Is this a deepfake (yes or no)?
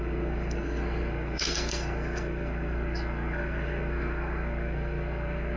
yes